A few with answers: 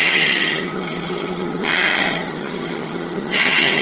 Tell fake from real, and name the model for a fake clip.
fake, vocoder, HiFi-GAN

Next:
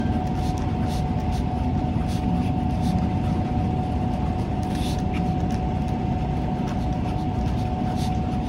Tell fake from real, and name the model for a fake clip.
real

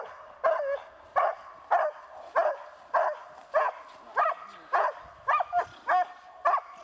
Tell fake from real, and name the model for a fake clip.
real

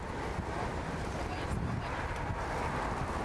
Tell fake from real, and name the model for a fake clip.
real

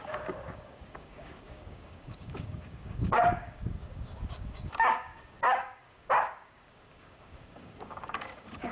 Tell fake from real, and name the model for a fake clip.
fake, codec, DAC